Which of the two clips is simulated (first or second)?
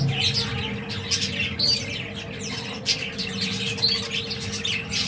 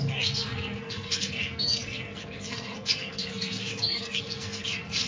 second